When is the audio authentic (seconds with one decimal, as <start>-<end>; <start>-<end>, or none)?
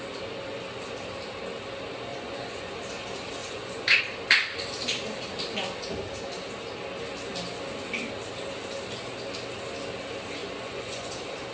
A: 0.0-2.1; 2.7-3.4; 4.0-10.4; 11.1-11.5